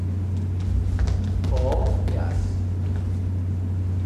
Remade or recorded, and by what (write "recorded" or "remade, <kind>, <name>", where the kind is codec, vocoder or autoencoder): recorded